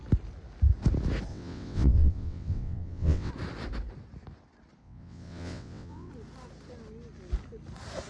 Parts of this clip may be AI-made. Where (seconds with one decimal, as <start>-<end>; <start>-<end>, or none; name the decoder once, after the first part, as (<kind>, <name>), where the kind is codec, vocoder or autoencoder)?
1.3-3.3 (vocoder, WaveNeXt); 4.8-6.1